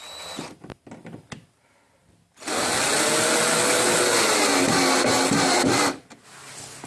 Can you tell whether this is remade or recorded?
recorded